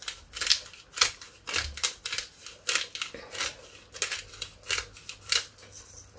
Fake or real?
real